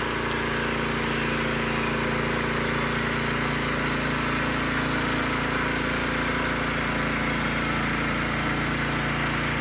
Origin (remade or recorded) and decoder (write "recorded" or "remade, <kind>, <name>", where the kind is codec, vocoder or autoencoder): recorded